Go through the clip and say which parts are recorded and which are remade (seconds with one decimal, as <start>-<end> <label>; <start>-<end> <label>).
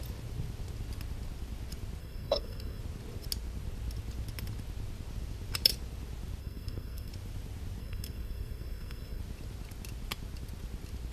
0.0-2.0 recorded; 2.0-2.8 remade; 2.8-6.4 recorded; 6.4-7.1 remade; 7.1-7.8 recorded; 7.8-9.2 remade; 9.2-11.1 recorded